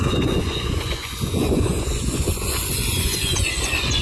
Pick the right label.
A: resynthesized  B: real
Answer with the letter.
A